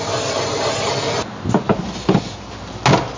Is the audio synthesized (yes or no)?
no